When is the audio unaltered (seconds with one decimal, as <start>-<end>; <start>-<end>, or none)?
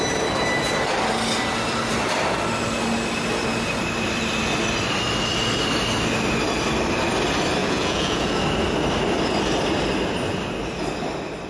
0.0-7.6; 8.4-11.5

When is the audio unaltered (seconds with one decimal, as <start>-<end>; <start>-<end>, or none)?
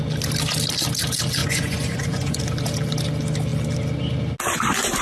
0.0-1.4; 2.4-5.0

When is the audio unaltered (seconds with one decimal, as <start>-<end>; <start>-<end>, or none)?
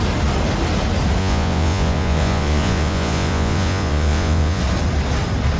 0.0-1.2; 4.6-5.6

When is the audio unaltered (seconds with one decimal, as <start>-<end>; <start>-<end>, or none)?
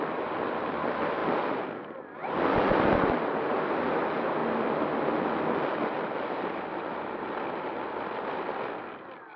0.0-9.4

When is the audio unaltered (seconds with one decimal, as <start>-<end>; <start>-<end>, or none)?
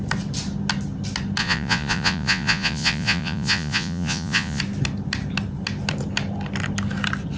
0.0-1.4; 4.6-7.4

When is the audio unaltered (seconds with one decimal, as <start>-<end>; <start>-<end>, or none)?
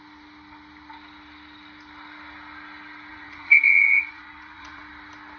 0.0-3.1; 4.9-5.4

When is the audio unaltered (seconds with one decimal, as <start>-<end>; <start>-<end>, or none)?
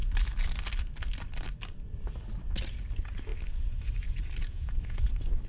0.0-4.4; 5.1-5.5